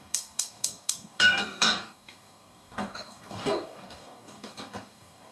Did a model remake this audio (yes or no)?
yes